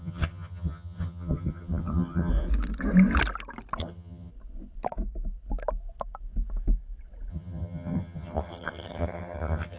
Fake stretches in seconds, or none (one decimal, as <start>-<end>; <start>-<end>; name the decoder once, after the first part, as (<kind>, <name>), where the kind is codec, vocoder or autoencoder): 0.0-2.3 (vocoder, HiFi-GAN); 3.8-4.3; 7.3-9.8